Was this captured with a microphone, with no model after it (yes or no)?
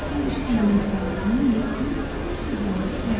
yes